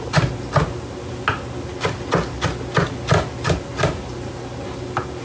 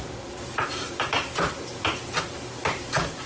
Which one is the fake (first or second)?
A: second